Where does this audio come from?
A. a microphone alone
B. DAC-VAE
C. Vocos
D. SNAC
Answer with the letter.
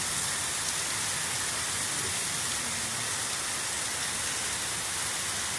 A